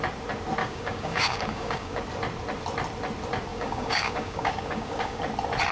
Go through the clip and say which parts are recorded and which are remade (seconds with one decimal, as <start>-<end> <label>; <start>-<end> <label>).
0.0-0.6 recorded; 0.6-2.0 remade; 2.0-3.5 recorded; 3.5-5.2 remade; 5.2-5.7 recorded